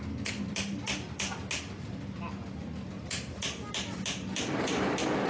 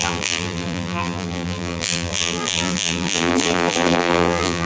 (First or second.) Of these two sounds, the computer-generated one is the second